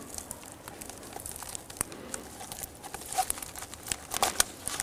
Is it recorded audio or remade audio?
recorded